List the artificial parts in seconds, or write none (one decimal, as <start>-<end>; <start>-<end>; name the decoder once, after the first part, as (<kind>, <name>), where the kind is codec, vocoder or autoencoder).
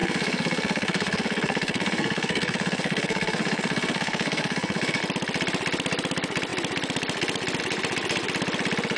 0.0-5.0 (codec, SNAC)